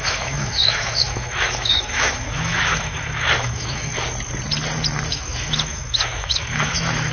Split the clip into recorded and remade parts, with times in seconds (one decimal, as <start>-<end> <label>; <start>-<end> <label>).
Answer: 0.0-3.9 remade; 3.9-5.1 recorded; 5.1-7.1 remade